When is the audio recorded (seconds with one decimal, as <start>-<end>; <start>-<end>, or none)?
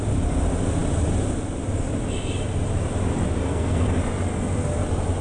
0.0-3.4; 4.0-5.2